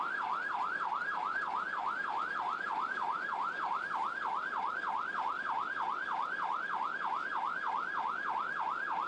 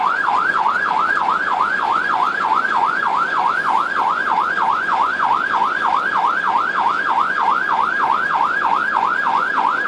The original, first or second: first